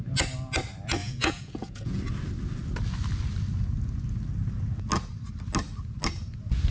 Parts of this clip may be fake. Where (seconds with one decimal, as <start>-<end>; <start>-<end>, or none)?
1.0-2.0